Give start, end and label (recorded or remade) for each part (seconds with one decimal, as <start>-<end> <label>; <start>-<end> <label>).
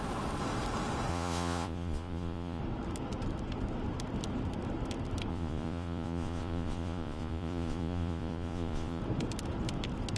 0.0-1.1 recorded; 1.1-2.6 remade; 2.6-5.3 recorded; 5.3-9.0 remade; 9.0-10.2 recorded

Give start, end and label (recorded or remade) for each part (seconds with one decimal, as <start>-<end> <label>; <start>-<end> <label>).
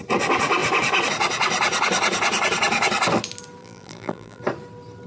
0.0-3.6 recorded; 3.6-4.4 remade; 4.4-5.1 recorded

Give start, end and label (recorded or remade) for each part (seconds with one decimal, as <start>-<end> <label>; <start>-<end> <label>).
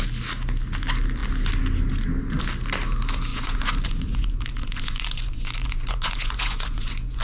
0.0-3.3 recorded; 3.3-7.2 remade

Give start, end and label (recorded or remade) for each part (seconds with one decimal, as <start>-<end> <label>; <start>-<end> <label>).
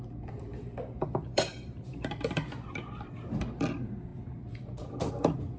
0.0-5.6 remade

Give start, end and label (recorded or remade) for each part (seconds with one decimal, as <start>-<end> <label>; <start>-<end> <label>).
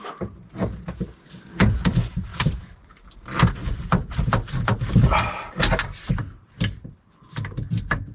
0.0-2.3 recorded; 2.3-4.2 remade; 4.2-8.1 recorded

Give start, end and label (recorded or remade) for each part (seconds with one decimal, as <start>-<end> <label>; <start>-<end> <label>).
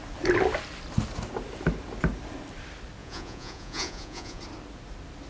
0.0-3.0 recorded; 3.0-4.4 remade; 4.4-5.3 recorded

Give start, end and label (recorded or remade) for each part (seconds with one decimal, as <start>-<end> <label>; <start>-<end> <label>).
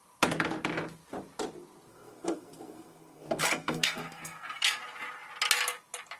0.0-1.9 recorded; 1.9-4.8 remade; 4.8-6.2 recorded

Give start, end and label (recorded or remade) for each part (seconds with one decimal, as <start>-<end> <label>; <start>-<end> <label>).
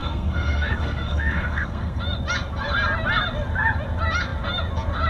0.0-2.0 remade; 2.0-5.1 recorded